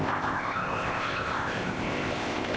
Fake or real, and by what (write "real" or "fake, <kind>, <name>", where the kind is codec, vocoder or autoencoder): fake, codec, ZipCodec